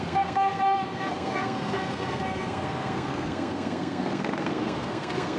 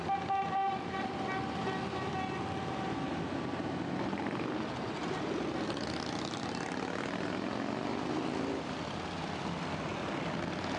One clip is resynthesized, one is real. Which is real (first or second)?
second